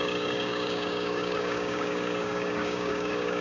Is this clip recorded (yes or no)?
no